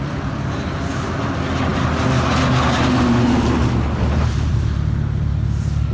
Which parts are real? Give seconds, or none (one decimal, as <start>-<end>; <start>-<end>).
0.0-5.9